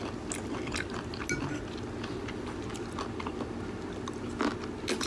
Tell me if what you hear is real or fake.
real